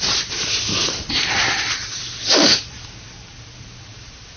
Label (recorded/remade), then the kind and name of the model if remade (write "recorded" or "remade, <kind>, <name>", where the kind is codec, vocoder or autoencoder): remade, vocoder, BigVGAN v2